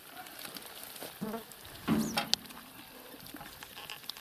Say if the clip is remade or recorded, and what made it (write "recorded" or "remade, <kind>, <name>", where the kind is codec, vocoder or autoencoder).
recorded